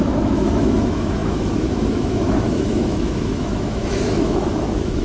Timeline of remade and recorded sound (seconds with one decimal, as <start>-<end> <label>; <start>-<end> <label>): 0.0-5.0 remade